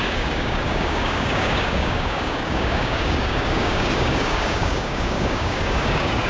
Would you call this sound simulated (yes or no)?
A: yes